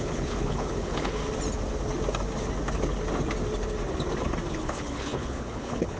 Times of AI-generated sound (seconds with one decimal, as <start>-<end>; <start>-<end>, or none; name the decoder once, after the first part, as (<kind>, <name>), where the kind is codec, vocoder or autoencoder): 0.0-1.2 (codec, HILCodec); 4.5-6.0